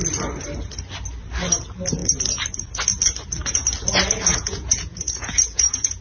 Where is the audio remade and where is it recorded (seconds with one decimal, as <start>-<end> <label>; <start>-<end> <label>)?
0.0-4.3 recorded; 4.3-6.0 remade

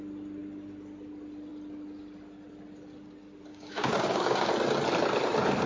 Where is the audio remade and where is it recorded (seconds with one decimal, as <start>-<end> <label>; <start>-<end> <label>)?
0.0-3.5 recorded; 3.5-4.5 remade; 4.5-5.7 recorded

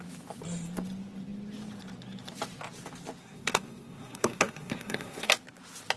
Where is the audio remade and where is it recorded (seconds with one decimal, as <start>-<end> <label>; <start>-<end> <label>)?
0.0-3.2 recorded; 3.2-5.3 remade; 5.3-6.0 recorded

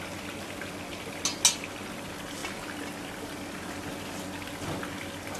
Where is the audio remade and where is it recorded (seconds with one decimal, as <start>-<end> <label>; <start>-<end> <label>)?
0.0-5.4 recorded

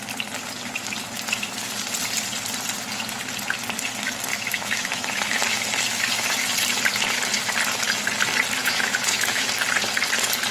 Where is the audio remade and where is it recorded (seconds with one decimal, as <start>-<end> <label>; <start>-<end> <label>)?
0.0-4.3 recorded; 4.3-5.4 remade; 5.4-8.6 recorded; 8.6-9.5 remade; 9.5-10.5 recorded

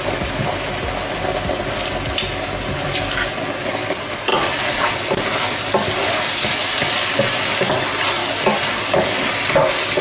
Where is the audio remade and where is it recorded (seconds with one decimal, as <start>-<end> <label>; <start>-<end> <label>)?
0.0-10.0 recorded

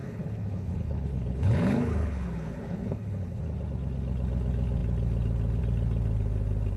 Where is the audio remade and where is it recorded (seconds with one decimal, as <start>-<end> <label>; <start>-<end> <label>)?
0.0-3.4 remade; 3.4-6.8 recorded

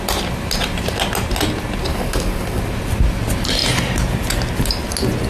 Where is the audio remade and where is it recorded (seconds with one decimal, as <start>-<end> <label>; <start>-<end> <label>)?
0.0-1.9 recorded; 1.9-2.6 remade; 2.6-5.3 recorded